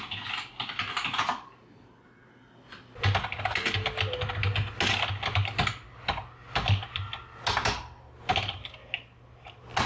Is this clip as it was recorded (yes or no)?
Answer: yes